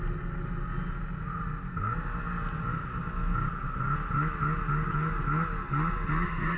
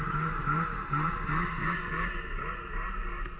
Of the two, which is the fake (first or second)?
second